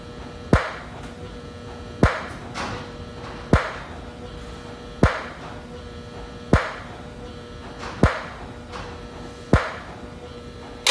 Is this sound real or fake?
real